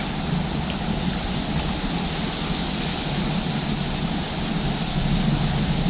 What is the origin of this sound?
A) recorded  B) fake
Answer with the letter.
A